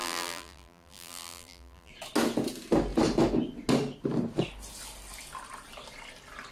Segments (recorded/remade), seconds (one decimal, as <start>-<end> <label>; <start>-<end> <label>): 0.0-1.9 remade; 1.9-6.5 recorded